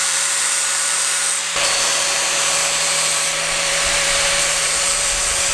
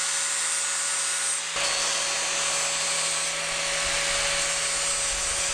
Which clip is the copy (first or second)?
first